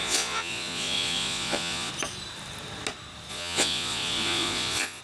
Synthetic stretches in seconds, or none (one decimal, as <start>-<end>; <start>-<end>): 0.0-1.9; 3.3-5.0